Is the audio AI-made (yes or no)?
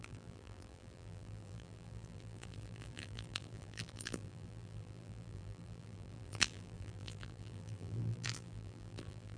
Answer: yes